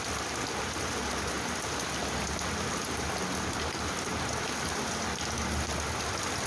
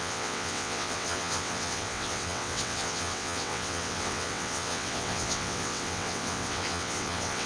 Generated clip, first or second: second